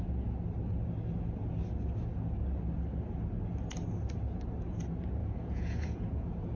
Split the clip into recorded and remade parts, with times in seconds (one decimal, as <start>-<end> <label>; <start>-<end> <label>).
0.0-5.2 recorded; 5.2-6.6 remade